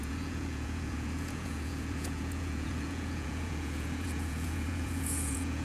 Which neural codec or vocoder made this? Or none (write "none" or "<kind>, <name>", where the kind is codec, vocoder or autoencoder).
vocoder, Vocos